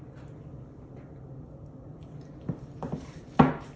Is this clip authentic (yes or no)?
yes